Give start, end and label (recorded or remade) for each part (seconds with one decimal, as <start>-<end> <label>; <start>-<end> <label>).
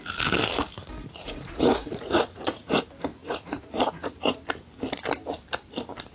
0.0-1.0 recorded; 1.0-2.8 remade; 2.8-3.2 recorded; 3.2-4.4 remade; 4.4-6.1 recorded